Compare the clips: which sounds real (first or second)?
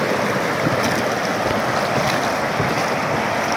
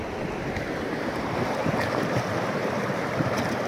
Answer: first